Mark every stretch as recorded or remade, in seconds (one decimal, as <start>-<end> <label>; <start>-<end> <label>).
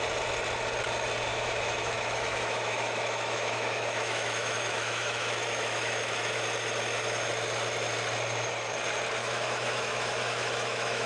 0.0-1.3 recorded; 1.3-6.4 remade; 6.4-9.2 recorded; 9.2-11.1 remade